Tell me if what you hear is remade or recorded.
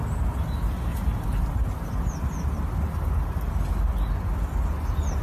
recorded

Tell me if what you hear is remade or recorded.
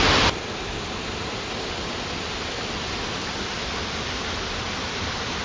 recorded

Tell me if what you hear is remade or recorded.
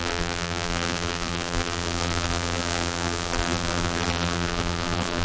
remade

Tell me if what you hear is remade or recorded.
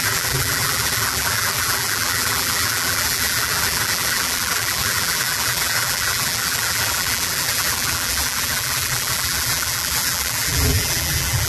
remade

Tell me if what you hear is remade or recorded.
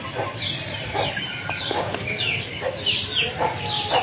recorded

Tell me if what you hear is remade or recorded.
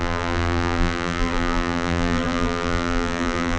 remade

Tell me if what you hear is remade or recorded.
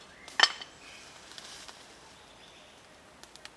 recorded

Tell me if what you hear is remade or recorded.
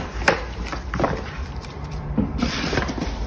remade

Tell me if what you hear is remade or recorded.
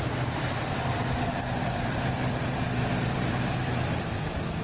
remade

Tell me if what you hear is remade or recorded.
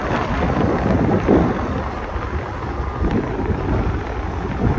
remade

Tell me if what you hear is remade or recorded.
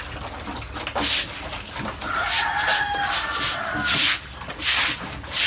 recorded